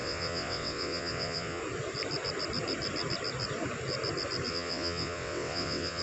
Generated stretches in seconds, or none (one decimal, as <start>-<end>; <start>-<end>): 0.0-1.6; 4.5-6.0